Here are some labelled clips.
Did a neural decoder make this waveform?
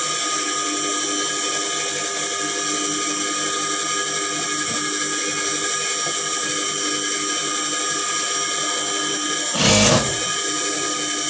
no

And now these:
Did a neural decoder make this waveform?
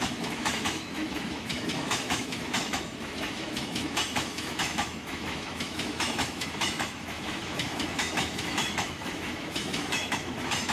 yes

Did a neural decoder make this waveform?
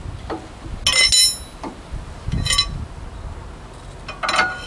no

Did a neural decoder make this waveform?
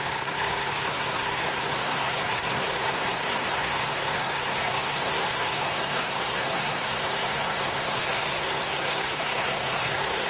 yes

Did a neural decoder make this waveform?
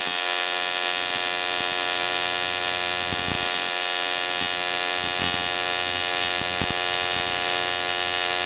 no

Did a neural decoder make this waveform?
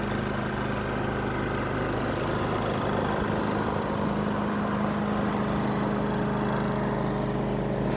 no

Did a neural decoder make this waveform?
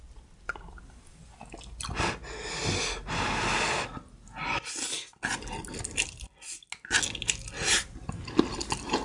no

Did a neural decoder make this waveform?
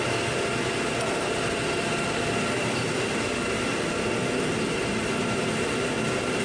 no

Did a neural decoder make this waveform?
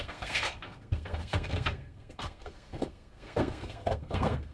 yes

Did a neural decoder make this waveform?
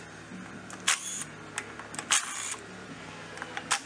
no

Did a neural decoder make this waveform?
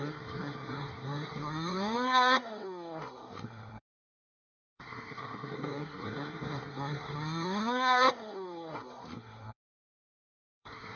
yes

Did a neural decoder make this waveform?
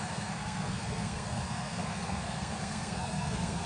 yes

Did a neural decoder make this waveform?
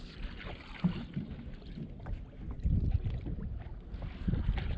no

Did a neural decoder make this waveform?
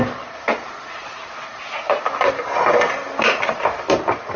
no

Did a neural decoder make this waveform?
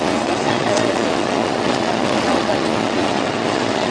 yes